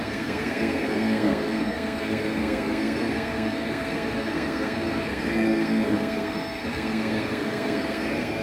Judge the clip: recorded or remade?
remade